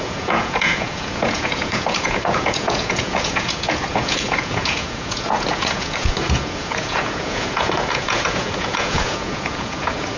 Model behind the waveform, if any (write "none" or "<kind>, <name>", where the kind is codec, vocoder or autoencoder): vocoder, Vocos